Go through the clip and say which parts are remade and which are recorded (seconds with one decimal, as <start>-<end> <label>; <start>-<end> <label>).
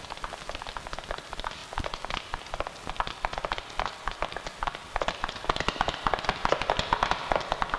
0.0-7.8 recorded